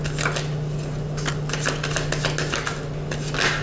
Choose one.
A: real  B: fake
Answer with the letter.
A